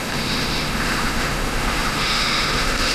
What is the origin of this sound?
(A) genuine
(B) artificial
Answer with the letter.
B